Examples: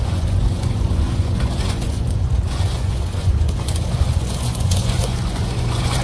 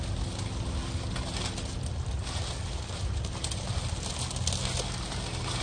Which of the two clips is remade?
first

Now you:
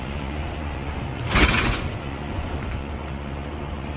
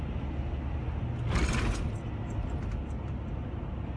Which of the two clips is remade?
first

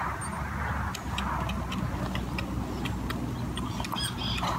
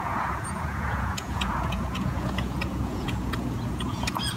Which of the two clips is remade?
second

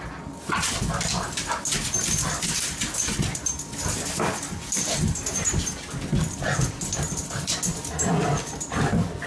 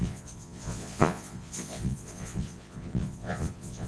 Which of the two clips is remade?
second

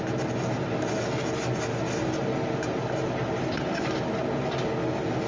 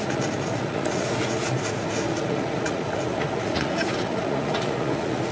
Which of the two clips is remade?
second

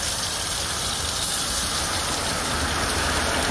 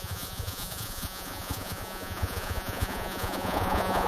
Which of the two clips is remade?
second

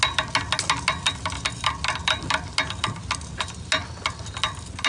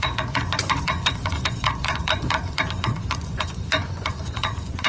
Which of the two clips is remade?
second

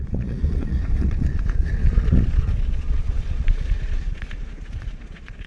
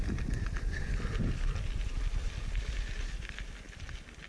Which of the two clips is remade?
first